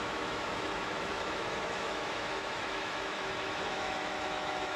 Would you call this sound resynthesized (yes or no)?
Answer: yes